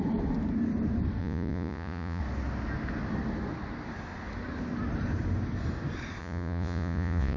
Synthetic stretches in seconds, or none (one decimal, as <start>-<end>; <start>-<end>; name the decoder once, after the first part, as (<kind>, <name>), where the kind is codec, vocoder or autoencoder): 1.2-2.2 (vocoder, Vocos); 6.2-7.4